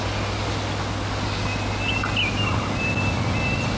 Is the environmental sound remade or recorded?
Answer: recorded